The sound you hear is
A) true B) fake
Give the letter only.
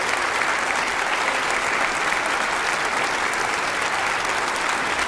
A